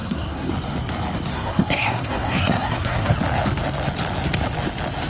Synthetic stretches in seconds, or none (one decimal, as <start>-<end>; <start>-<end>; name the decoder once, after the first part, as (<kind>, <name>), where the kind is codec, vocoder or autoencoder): 0.0-0.5 (codec, SNAC); 1.3-3.1